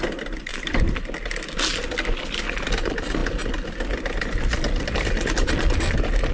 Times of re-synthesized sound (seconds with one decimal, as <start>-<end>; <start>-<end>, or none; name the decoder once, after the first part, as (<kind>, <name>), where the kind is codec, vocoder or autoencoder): none